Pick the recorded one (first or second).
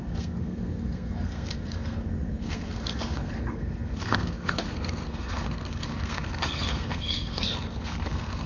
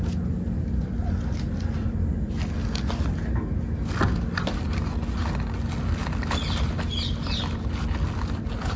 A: second